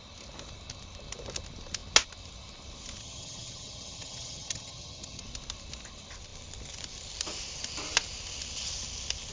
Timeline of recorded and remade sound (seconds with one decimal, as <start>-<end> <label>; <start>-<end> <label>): 0.0-3.0 recorded; 3.0-5.2 remade; 5.2-9.3 recorded